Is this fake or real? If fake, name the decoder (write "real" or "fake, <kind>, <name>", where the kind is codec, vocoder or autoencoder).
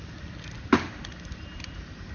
real